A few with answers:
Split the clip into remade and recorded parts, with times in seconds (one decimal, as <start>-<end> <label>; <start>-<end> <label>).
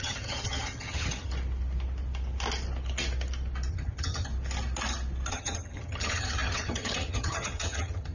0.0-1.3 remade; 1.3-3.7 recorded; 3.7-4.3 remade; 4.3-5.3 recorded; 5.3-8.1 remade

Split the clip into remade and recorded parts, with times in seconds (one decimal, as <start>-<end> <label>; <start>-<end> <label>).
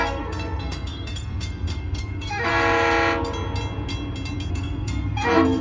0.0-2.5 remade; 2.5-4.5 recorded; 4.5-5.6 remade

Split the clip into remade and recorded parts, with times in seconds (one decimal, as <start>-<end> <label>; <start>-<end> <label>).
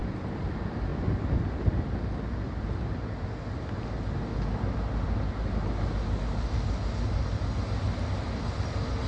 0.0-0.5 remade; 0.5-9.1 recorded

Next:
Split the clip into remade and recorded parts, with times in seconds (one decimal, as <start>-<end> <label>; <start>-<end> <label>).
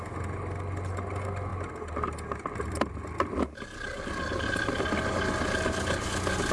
0.0-6.5 recorded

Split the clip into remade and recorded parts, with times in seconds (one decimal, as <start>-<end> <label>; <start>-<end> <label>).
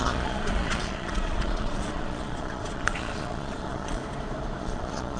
0.0-4.0 remade; 4.0-4.6 recorded; 4.6-5.2 remade